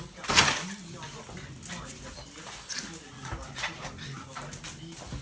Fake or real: real